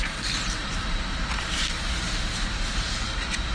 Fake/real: fake